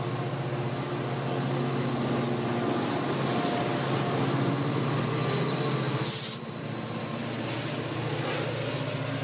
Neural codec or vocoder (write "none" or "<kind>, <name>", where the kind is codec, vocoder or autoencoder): none